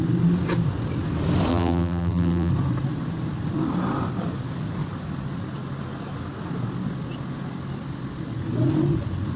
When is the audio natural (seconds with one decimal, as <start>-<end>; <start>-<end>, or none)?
0.0-1.5; 2.5-9.4